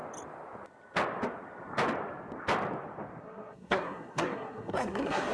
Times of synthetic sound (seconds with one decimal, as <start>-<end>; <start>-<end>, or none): 3.2-5.3